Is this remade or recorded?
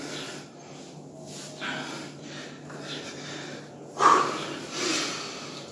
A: recorded